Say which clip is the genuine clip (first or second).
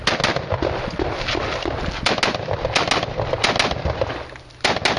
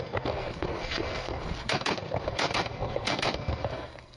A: first